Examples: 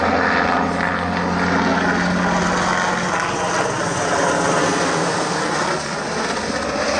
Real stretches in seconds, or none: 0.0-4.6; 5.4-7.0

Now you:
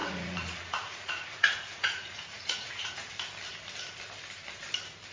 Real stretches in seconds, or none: 3.1-5.1

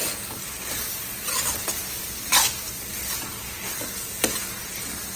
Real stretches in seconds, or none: 0.0-5.2

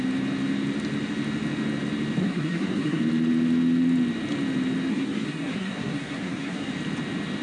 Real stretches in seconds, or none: 0.0-2.2; 3.0-4.9; 6.7-7.4

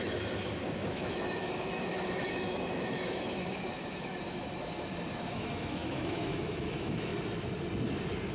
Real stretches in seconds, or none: 4.1-5.3; 7.1-8.3

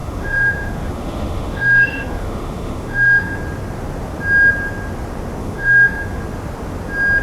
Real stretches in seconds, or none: 3.4-5.4; 6.2-7.2

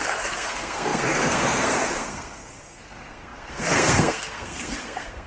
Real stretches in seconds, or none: none

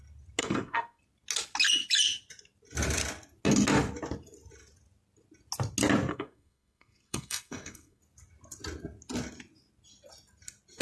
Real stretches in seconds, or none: 0.0-0.4; 1.0-6.1; 8.0-10.8